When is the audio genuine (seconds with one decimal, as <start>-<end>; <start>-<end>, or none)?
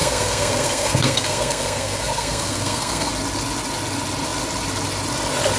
3.1-5.6